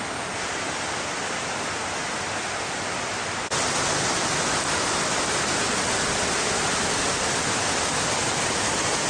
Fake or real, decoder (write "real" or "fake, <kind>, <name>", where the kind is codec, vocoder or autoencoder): real